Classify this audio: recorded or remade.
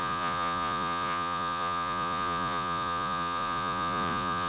remade